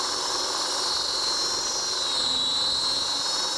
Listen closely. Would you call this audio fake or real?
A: real